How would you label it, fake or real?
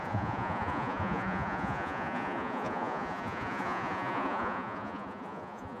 fake